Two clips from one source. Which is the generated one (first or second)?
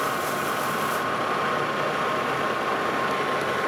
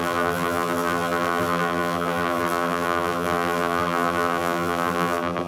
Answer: second